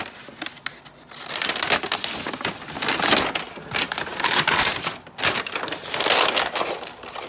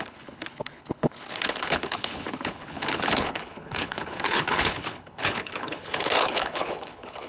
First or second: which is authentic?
first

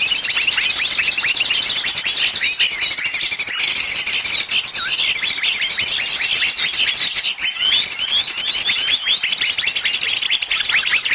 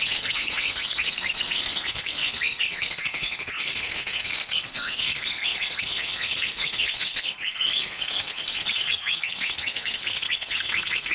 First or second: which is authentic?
first